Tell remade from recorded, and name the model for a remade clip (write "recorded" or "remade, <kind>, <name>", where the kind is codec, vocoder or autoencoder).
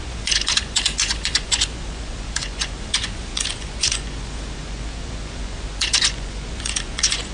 remade, vocoder, Vocos